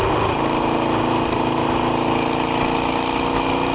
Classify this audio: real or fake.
real